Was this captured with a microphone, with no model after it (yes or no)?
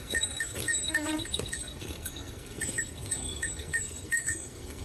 no